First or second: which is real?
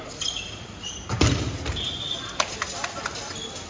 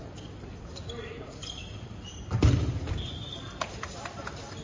first